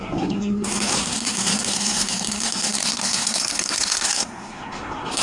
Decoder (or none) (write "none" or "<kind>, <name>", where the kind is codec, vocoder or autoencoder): codec, SNAC